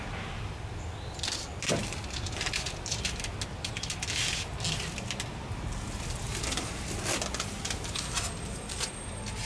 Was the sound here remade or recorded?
recorded